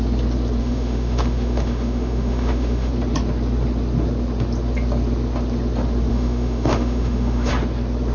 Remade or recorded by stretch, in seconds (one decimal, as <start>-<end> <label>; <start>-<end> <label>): 0.0-0.6 recorded; 0.6-2.9 remade; 2.9-6.1 recorded; 6.1-7.5 remade; 7.5-8.1 recorded